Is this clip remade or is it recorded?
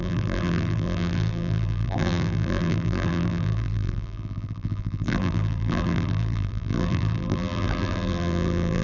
remade